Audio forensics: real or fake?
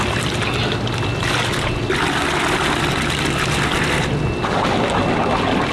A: real